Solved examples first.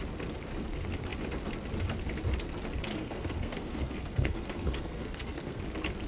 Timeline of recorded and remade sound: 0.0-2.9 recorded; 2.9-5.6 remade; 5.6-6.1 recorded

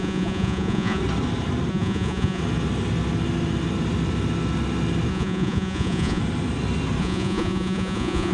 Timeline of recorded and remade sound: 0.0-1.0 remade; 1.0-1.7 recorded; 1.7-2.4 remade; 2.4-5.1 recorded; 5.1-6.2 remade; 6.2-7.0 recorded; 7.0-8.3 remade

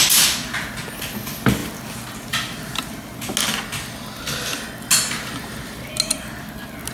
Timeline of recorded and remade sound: 0.0-6.9 recorded

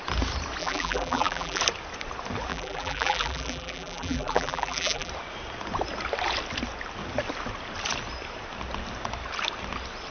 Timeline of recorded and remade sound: 0.0-0.6 recorded; 0.6-1.6 remade; 1.6-2.5 recorded; 2.5-5.1 remade; 5.1-10.1 recorded

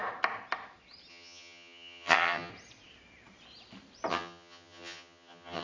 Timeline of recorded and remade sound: 0.0-1.1 recorded; 1.1-2.5 remade; 2.5-4.1 recorded; 4.1-5.6 remade